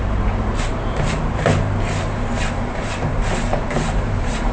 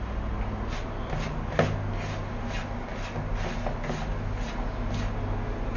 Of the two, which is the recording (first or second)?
second